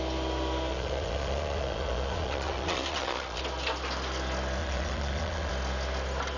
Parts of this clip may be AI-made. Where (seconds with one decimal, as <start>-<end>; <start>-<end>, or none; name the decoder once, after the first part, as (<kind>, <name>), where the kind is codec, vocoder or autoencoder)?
0.7-3.4 (vocoder, Vocos); 4.6-5.5